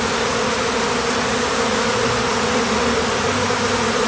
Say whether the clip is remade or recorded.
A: recorded